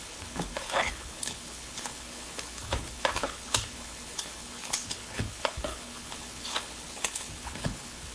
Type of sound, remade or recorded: remade